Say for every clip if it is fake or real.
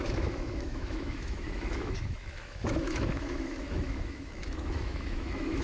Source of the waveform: fake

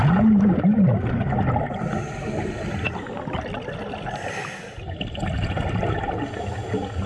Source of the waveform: real